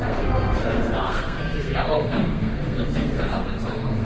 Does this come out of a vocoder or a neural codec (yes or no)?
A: yes